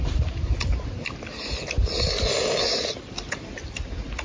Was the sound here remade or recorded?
recorded